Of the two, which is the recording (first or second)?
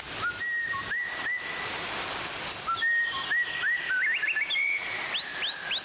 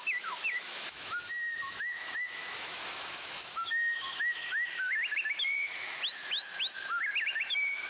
first